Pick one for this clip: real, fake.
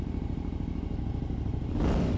real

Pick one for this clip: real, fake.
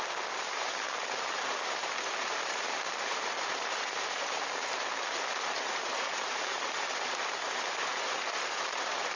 fake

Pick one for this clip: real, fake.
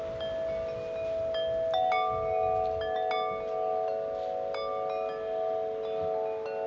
real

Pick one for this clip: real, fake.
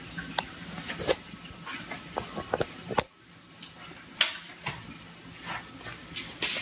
real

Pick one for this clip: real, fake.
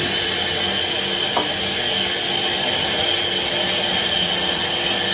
real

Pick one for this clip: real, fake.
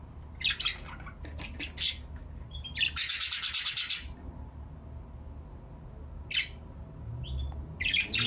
real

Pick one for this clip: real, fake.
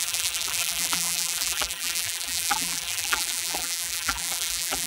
fake